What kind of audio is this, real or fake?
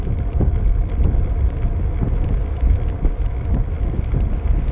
real